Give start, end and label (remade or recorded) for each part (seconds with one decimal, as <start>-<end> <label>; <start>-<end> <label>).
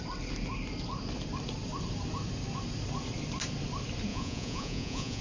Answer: 0.0-4.1 recorded; 4.1-5.2 remade